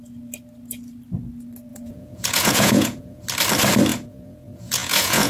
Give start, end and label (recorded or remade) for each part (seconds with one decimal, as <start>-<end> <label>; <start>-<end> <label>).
0.0-1.7 recorded; 1.7-3.2 remade; 3.2-3.9 recorded; 3.9-5.3 remade